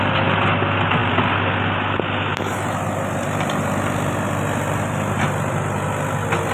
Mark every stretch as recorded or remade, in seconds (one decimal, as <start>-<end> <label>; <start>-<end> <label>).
0.0-6.5 recorded

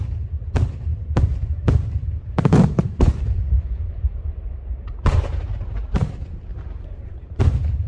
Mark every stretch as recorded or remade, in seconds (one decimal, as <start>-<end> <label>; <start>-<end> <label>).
0.0-0.9 recorded; 0.9-5.2 remade; 5.2-6.5 recorded; 6.5-7.4 remade; 7.4-7.9 recorded

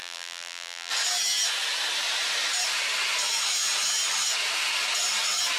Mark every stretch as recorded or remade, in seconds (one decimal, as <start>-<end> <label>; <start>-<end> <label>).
0.0-0.9 remade; 0.9-5.6 recorded

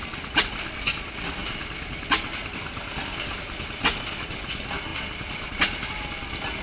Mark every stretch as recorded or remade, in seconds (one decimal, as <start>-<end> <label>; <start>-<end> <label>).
0.0-6.6 recorded

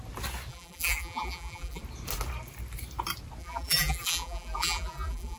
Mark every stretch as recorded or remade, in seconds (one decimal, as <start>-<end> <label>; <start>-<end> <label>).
0.0-0.5 recorded; 0.5-1.8 remade; 1.8-3.4 recorded; 3.4-5.4 remade

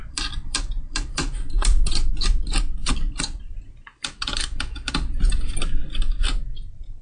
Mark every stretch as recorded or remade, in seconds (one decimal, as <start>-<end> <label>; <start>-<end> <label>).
0.0-2.1 remade; 2.1-2.8 recorded; 2.8-4.9 remade; 4.9-5.8 recorded; 5.8-7.0 remade

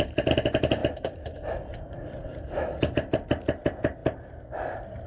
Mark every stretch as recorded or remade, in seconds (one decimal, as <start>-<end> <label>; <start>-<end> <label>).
0.0-5.1 remade